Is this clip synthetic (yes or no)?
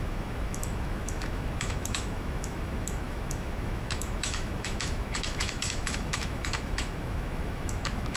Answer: yes